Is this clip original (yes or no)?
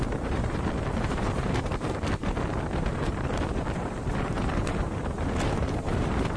no